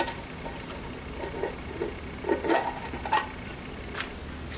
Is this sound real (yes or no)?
yes